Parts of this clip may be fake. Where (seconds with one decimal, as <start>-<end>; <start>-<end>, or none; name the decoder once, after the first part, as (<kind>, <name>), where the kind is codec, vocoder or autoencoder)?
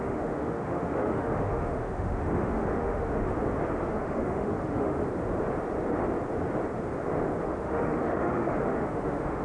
0.0-3.3 (autoencoder, DAC-VAE); 3.8-5.0; 7.4-9.4